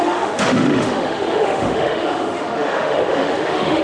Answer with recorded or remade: remade